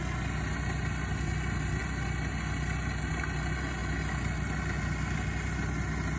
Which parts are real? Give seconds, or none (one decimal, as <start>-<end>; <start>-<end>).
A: 0.0-6.2